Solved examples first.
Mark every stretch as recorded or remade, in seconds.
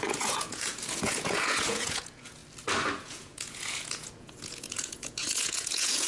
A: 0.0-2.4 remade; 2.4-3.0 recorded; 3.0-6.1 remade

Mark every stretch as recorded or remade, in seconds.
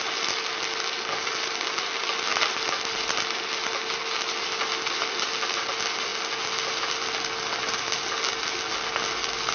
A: 0.0-9.5 recorded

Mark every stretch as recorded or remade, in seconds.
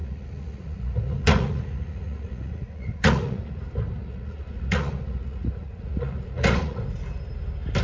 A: 0.0-3.6 remade; 3.6-4.0 recorded; 4.0-6.8 remade; 6.8-7.8 recorded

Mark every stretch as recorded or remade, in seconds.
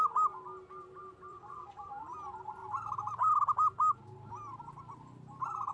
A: 0.0-1.3 recorded; 1.3-1.9 remade; 1.9-5.7 recorded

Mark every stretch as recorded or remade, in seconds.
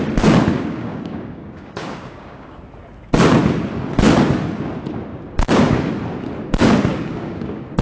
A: 0.0-0.5 recorded; 0.5-2.6 remade; 2.6-5.1 recorded; 5.1-5.9 remade; 5.9-6.9 recorded; 6.9-7.8 remade